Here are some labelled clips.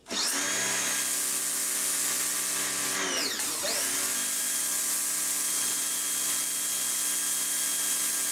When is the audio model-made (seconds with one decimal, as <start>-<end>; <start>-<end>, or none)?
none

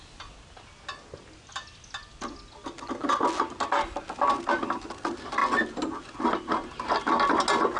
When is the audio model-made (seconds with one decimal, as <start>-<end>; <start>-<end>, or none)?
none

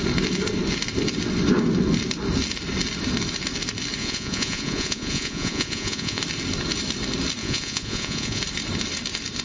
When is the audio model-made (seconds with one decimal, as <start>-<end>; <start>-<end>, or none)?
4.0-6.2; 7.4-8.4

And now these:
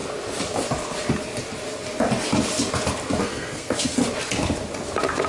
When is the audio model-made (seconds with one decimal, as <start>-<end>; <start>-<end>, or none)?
3.2-4.0

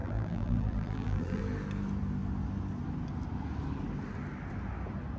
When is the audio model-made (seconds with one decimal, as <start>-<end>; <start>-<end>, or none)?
0.0-1.4